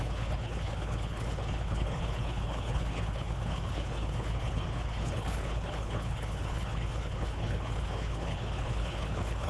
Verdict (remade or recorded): remade